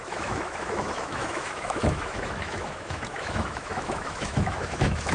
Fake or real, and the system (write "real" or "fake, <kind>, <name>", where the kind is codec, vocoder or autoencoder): fake, autoencoder, DAC-VAE